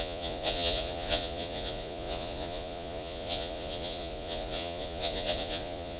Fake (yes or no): yes